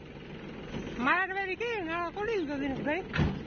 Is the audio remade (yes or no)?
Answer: no